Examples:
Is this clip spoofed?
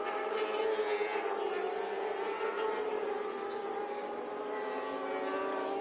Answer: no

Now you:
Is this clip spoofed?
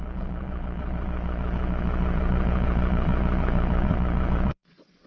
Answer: yes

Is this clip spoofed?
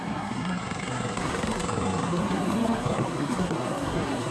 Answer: yes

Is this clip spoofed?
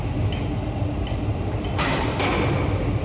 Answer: no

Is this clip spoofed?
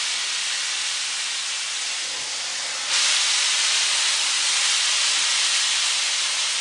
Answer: no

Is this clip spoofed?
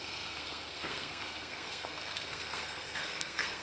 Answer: yes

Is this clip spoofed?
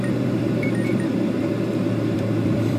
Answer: yes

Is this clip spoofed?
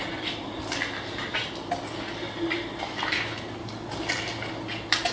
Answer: no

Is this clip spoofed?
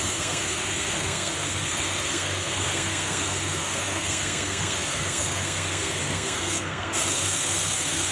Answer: yes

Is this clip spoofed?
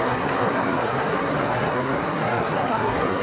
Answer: yes